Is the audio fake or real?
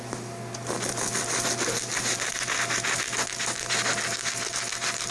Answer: real